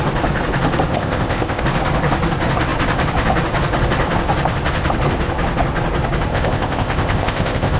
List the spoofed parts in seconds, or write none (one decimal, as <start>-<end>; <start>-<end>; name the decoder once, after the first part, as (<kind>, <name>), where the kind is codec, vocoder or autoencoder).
0.9-1.6 (codec, ZipCodec); 6.3-7.8